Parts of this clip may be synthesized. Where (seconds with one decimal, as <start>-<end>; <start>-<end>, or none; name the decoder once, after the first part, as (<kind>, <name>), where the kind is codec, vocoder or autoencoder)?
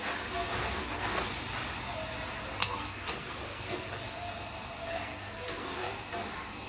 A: 0.6-1.2 (codec, SNAC); 2.6-4.0; 4.9-5.9